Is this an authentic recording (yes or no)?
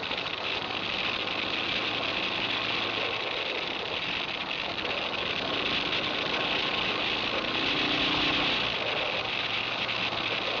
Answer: yes